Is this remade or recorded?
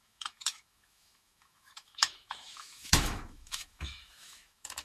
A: remade